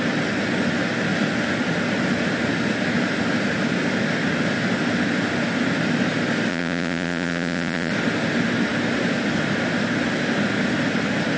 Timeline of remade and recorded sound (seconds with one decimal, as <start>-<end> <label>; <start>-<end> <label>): 0.0-6.5 recorded; 6.5-7.9 remade; 7.9-11.4 recorded